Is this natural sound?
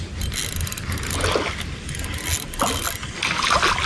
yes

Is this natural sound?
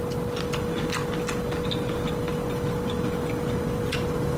yes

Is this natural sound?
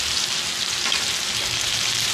yes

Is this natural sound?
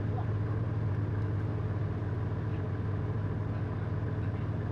yes